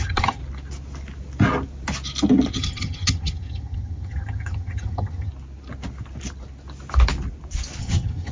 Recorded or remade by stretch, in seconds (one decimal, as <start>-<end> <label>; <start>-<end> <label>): 0.0-0.4 remade; 0.4-2.5 recorded; 2.5-5.3 remade; 5.3-7.8 recorded; 7.8-8.3 remade